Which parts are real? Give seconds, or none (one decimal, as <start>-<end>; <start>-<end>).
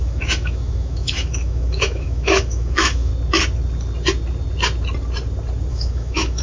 3.1-5.7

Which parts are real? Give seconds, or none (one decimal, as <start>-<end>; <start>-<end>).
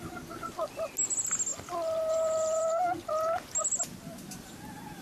0.0-5.0